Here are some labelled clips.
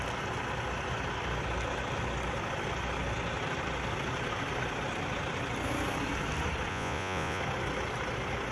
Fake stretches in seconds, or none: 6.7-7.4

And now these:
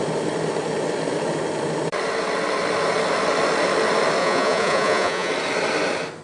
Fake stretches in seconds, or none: 4.2-5.3